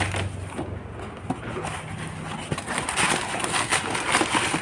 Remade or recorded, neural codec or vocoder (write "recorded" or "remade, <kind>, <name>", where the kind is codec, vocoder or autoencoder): recorded